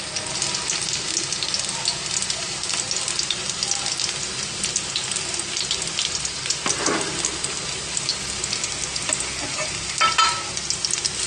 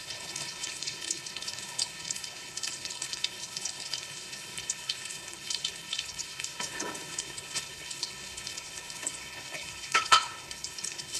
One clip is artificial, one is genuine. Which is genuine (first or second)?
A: first